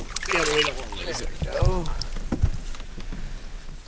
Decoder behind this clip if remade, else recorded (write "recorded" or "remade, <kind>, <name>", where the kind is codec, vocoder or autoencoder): recorded